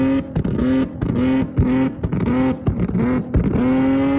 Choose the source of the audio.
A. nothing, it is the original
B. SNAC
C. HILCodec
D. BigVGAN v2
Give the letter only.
A